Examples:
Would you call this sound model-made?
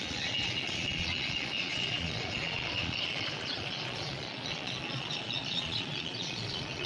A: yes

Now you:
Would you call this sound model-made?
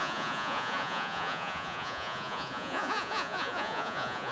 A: yes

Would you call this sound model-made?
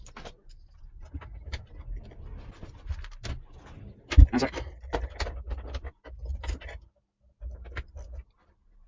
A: no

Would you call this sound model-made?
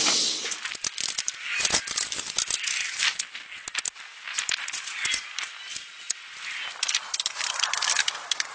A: no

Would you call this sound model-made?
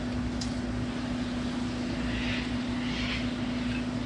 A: no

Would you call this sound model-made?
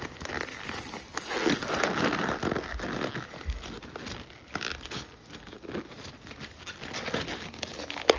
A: no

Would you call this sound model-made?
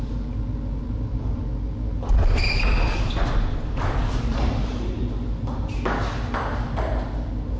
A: no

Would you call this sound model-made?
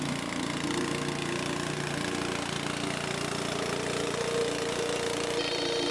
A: no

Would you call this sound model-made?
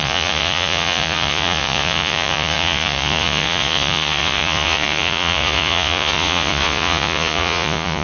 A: yes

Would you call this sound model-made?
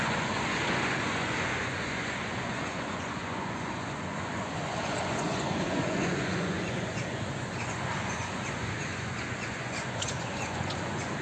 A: yes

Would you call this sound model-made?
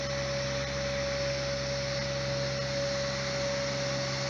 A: no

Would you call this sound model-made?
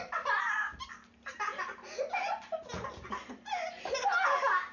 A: no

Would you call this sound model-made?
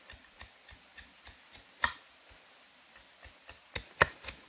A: no